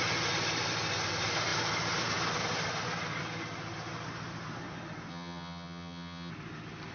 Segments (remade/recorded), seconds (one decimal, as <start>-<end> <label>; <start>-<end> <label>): 0.0-5.1 recorded; 5.1-6.3 remade; 6.3-6.9 recorded